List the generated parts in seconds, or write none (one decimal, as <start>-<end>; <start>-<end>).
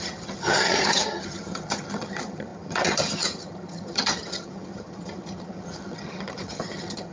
0.0-7.1